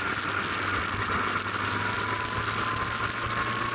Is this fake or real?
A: real